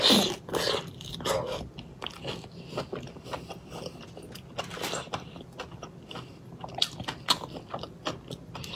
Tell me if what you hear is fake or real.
real